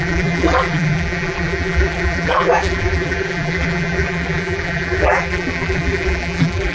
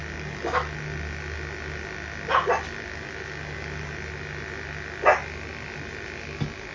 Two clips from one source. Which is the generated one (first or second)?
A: first